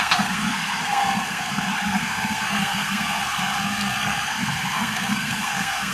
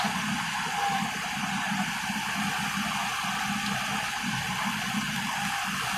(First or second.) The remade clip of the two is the first